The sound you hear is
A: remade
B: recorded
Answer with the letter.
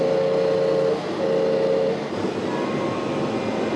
B